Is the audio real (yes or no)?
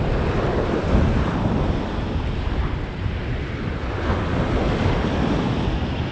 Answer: yes